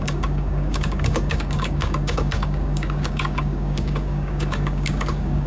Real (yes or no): no